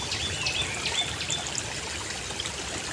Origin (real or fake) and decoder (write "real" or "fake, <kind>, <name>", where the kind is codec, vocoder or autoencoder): real